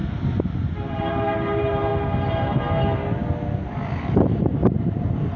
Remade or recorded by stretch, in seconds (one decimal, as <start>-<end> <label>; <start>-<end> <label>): 0.0-0.9 recorded; 0.9-1.9 remade; 1.9-3.6 recorded; 3.6-5.4 remade